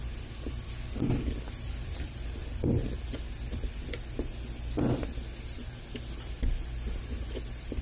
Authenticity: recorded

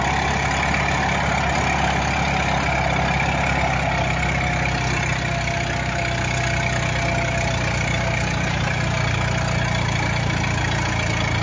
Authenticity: recorded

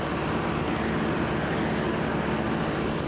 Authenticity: recorded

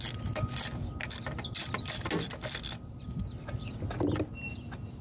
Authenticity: recorded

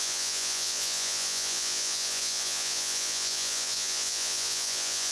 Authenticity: remade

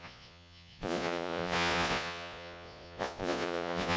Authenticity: remade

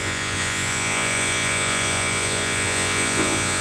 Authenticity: remade